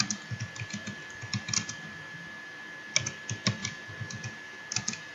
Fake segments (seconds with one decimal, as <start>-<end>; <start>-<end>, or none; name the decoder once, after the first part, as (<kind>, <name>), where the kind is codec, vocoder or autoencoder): none